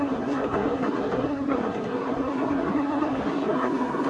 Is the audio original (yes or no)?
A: no